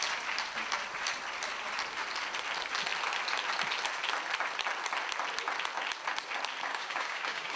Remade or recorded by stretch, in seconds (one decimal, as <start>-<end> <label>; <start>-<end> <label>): 0.0-6.7 recorded; 6.7-7.6 remade